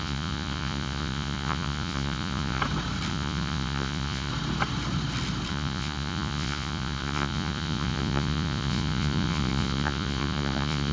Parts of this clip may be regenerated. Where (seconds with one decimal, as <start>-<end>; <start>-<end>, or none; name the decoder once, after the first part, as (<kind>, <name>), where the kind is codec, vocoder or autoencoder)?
0.0-2.6 (vocoder, Vocos); 3.1-4.3; 5.5-10.9